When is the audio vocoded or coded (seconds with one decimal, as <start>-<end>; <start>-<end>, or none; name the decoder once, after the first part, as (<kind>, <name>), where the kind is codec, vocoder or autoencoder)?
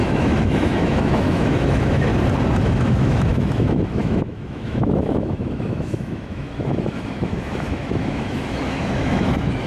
0.0-2.1 (autoencoder, DAC-VAE); 2.6-9.7